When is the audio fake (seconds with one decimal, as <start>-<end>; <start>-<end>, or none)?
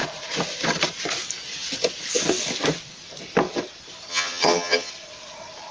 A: 4.1-4.9